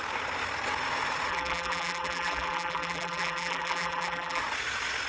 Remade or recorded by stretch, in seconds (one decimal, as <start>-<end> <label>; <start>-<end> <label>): 0.0-1.3 recorded; 1.3-4.4 remade; 4.4-5.1 recorded